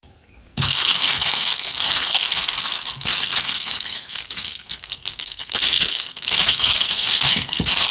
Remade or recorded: remade